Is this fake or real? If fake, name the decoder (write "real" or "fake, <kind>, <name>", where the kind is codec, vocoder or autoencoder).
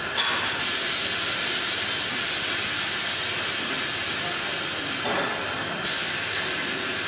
real